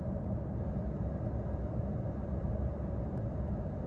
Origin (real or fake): real